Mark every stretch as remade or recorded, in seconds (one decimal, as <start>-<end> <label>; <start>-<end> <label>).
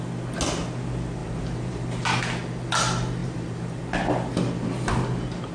0.0-1.2 recorded; 1.2-2.2 remade; 2.2-3.2 recorded; 3.2-3.8 remade; 3.8-5.5 recorded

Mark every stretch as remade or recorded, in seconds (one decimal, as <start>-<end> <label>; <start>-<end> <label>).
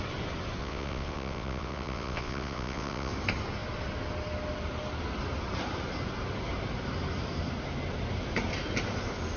0.0-0.6 recorded; 0.6-3.1 remade; 3.1-9.4 recorded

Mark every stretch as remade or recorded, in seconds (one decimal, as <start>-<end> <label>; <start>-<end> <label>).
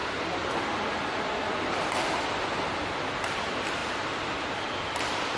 0.0-5.4 remade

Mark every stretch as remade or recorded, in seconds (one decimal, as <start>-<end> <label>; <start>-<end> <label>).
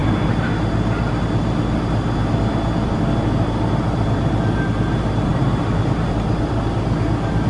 0.0-1.4 remade; 1.4-5.3 recorded; 5.3-6.4 remade; 6.4-7.5 recorded